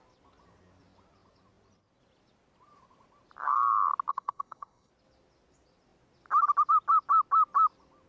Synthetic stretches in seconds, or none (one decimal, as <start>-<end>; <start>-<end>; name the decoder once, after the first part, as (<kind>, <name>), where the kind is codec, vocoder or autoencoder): 4.1-4.9 (codec, HILCodec)

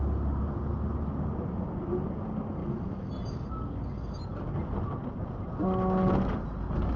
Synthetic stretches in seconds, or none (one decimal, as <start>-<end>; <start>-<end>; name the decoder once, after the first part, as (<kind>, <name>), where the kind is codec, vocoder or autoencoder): 2.6-3.1 (autoencoder, DAC-VAE)

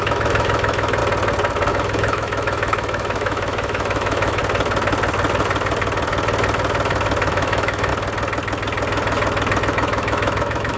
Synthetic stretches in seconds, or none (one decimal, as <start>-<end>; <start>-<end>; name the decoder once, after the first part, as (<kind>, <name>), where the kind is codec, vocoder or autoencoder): 0.0-1.0 (autoencoder, DAC-VAE); 1.7-4.4; 7.3-7.9; 9.6-10.8

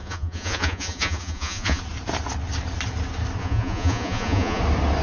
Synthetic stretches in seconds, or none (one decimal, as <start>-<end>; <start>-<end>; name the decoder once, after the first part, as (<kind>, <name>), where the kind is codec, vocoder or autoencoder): 0.0-1.8 (vocoder, Vocos); 3.4-4.6

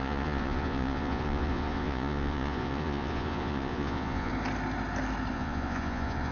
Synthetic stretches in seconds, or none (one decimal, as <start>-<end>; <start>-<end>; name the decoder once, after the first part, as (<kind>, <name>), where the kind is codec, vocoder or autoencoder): 0.0-4.3 (vocoder, Vocos); 5.3-6.3

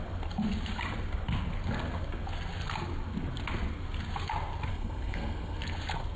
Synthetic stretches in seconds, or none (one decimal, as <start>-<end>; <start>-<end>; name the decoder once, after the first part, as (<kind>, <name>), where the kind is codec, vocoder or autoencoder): 4.7-5.6 (codec, SNAC)

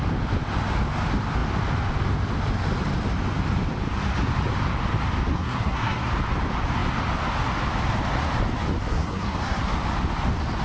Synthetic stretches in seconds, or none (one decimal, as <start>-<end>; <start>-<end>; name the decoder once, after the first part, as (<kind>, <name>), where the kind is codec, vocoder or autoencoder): 5.3-6.1 (codec, SNAC); 8.9-9.6

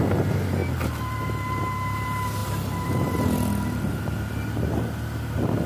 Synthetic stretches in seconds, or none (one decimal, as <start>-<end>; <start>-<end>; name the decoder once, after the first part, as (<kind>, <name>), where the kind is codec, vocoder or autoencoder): none